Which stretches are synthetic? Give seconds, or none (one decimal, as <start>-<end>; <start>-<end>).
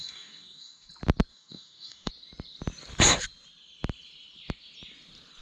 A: 0.0-0.9; 1.3-2.1